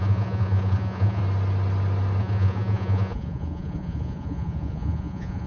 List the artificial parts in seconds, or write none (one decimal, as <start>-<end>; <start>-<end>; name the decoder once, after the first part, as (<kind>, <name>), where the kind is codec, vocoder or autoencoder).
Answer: 0.0-1.2 (vocoder, Vocos); 2.2-5.5